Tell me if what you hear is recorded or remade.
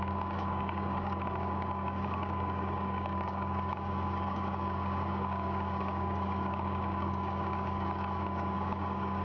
remade